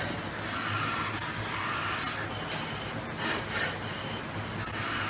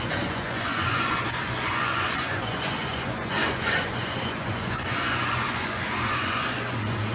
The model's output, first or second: second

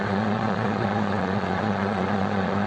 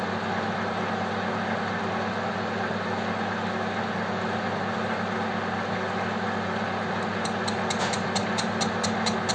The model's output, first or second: first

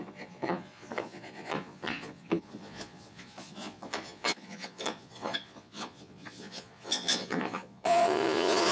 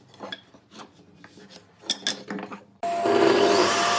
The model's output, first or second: first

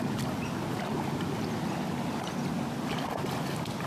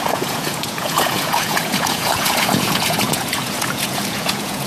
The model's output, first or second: second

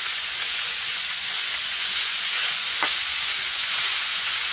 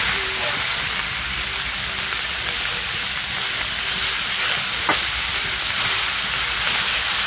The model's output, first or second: first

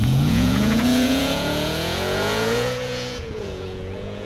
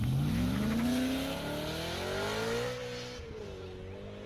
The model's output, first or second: first